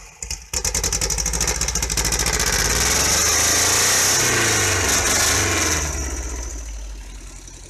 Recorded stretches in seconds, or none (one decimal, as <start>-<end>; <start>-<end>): 0.0-7.7